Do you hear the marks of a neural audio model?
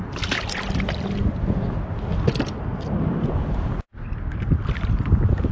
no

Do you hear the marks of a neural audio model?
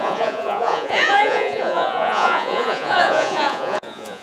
yes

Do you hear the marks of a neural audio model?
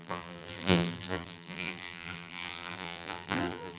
yes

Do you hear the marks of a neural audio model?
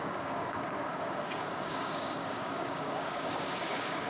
yes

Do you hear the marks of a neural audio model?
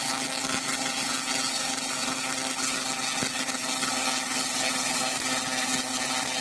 no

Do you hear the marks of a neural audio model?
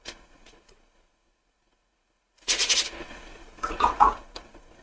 yes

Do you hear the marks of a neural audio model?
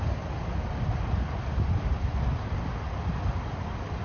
no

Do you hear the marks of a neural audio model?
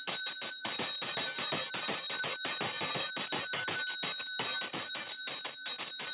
no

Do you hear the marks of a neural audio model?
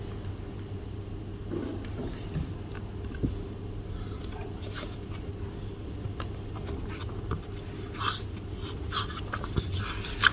no